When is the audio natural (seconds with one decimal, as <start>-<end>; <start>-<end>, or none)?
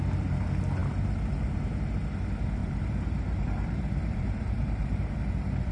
0.0-2.6; 5.1-5.7